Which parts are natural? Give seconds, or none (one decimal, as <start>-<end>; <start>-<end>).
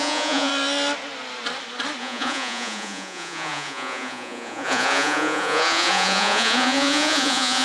0.5-2.0